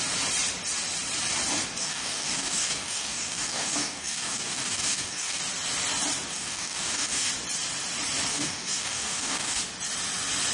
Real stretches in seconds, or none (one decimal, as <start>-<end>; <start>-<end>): 0.0-1.8; 5.4-6.3; 7.3-8.3; 9.6-10.5